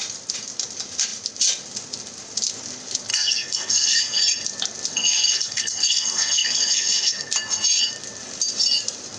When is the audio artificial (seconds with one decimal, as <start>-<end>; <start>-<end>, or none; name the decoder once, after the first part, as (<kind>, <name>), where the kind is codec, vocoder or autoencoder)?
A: 3.1-4.2 (codec, SNAC); 4.9-7.3